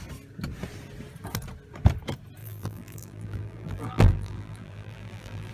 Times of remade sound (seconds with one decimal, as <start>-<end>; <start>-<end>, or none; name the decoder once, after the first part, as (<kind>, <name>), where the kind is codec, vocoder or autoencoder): 2.4-5.5 (vocoder, BigVGAN v2)